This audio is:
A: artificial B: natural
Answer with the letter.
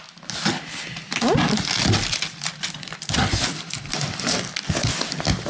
B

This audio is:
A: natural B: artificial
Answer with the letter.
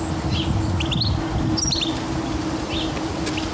A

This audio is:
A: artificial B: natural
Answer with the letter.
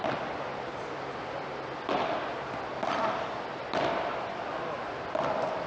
B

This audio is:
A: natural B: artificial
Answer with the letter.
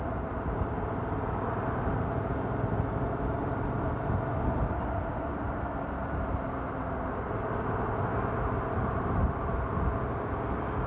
A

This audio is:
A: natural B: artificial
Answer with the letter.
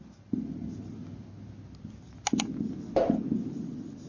A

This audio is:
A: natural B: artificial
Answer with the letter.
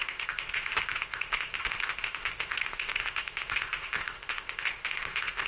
B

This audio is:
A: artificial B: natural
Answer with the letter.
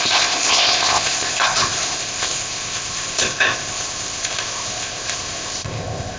A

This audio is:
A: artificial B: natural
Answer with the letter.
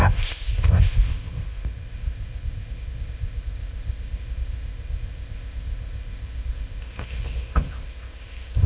A